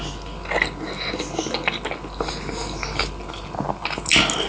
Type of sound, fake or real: real